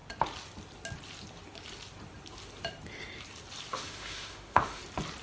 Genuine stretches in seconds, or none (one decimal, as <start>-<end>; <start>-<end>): 0.0-3.7; 4.8-5.2